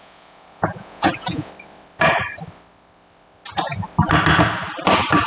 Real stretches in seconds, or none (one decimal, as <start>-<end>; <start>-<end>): 1.5-5.3